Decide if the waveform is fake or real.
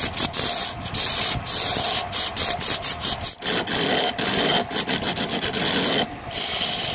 real